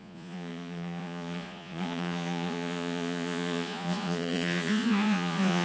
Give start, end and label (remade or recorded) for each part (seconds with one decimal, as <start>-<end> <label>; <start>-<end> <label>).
0.0-5.6 remade